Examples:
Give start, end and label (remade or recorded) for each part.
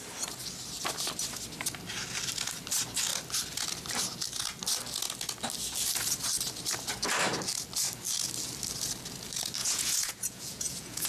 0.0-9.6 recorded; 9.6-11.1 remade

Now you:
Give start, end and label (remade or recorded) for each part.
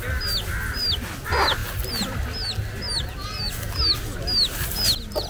0.0-5.3 recorded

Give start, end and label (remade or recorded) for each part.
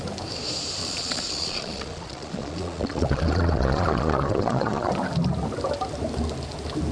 0.0-0.8 recorded; 0.8-4.9 remade; 4.9-6.9 recorded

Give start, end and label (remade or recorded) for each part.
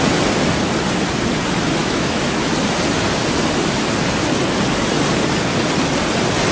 0.0-1.8 recorded; 1.8-2.3 remade; 2.3-6.5 recorded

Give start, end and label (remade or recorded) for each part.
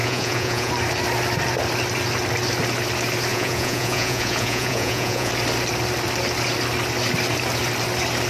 0.0-0.7 remade; 0.7-3.3 recorded; 3.3-5.3 remade; 5.3-8.3 recorded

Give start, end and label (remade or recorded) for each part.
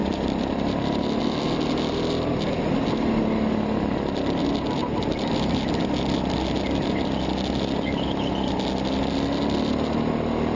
0.0-1.2 remade; 1.2-4.8 recorded; 4.8-5.3 remade; 5.3-10.5 recorded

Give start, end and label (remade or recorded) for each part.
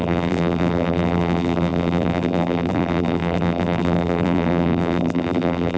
0.0-5.8 remade